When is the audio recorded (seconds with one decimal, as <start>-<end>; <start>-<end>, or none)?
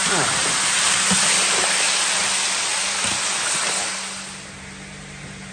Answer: 0.0-5.5